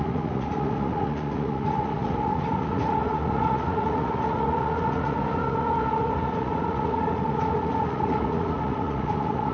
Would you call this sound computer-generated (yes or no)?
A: yes